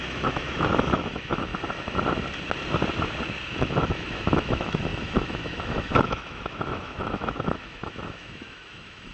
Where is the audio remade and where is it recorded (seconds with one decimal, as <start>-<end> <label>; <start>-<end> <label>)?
0.0-1.5 remade; 1.5-3.5 recorded; 3.5-9.1 remade